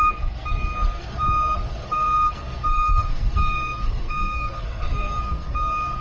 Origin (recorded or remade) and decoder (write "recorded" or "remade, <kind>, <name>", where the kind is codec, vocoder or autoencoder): remade, codec, SNAC